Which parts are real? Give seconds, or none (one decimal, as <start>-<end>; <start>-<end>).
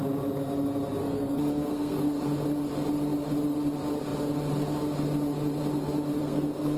0.0-1.0; 2.2-6.2